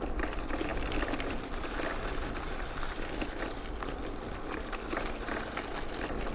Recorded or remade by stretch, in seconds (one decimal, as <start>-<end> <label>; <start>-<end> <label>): 0.0-6.3 recorded